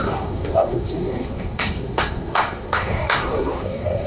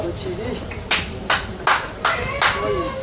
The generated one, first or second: first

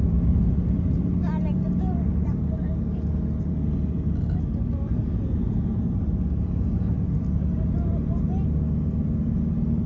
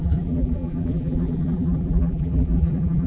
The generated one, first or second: second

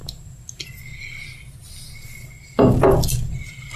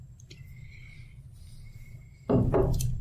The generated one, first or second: second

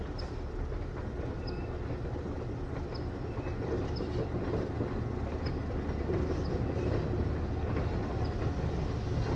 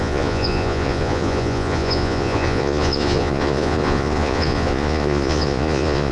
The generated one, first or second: second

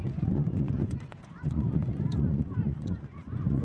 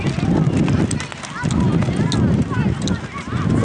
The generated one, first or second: first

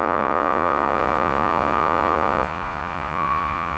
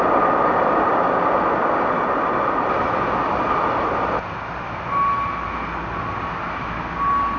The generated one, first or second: first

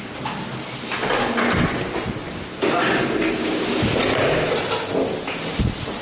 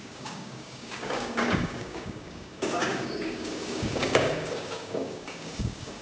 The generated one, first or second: second